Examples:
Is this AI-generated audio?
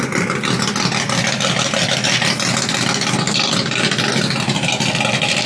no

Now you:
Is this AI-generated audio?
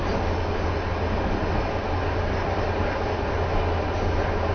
no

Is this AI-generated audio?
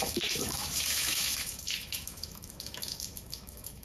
yes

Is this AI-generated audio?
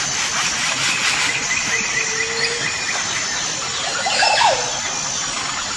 no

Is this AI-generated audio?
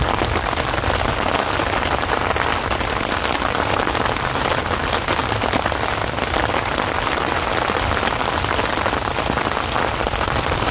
no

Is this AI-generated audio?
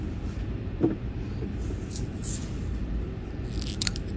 no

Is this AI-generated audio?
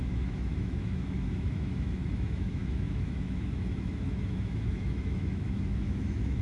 yes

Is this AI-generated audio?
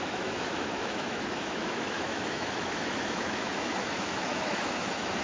yes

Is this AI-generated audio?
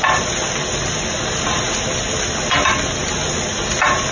no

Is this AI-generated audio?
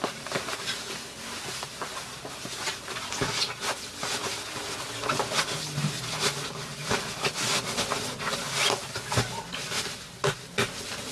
no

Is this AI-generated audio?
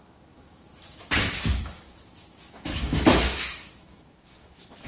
yes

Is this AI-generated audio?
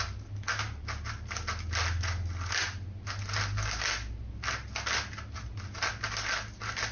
no